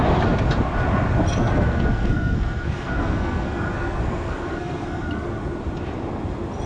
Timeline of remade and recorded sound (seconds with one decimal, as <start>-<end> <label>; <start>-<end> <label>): 0.0-1.4 recorded; 1.4-5.4 remade; 5.4-6.7 recorded